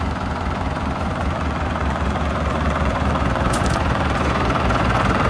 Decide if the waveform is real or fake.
fake